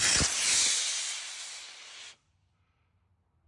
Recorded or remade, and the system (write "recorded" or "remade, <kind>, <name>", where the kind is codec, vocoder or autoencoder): recorded